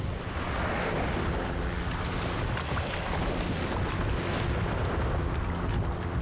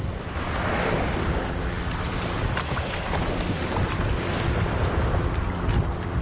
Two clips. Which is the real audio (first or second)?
first